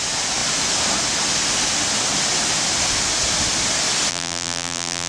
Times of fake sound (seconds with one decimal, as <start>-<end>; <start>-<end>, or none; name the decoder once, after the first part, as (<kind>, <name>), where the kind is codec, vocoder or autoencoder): 4.1-5.1 (vocoder, BigVGAN v2)